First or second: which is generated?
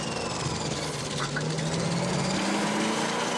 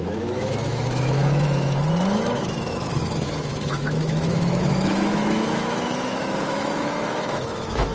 second